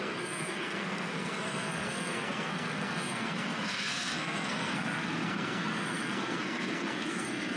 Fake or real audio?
fake